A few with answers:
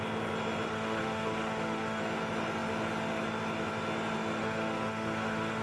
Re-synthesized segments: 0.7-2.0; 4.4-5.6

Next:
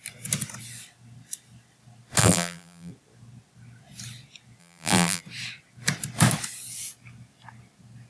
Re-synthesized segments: 2.2-2.9; 4.6-5.2

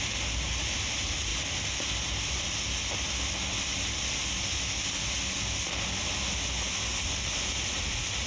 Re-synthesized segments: none

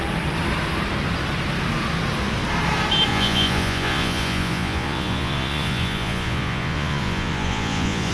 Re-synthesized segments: 3.1-8.1

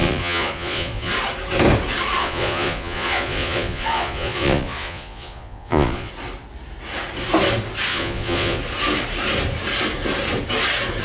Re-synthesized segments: 0.0-1.1; 2.2-6.1; 7.9-8.6

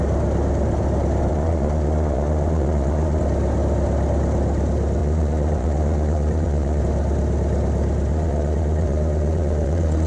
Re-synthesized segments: 1.3-3.2; 5.0-6.8; 8.1-10.1